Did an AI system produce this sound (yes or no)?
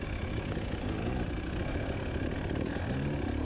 no